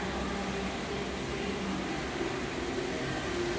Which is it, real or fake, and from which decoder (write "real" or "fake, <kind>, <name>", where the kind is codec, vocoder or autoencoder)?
real